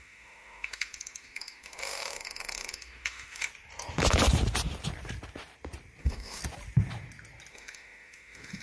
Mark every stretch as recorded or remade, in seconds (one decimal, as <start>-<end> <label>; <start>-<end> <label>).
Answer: 0.0-3.5 remade; 3.5-6.0 recorded; 6.0-6.4 remade; 6.4-7.5 recorded; 7.5-8.6 remade